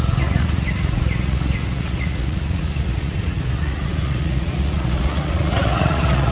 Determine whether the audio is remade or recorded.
remade